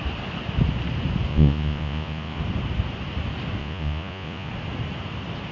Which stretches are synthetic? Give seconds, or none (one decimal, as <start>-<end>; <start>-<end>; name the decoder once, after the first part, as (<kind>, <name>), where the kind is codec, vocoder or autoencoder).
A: 1.3-2.4 (vocoder, Vocos); 3.6-4.5